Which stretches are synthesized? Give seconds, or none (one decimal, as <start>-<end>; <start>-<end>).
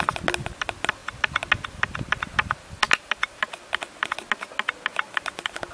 none